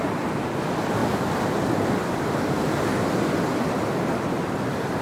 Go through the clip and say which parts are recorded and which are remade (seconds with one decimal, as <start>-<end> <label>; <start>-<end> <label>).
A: 0.0-5.0 recorded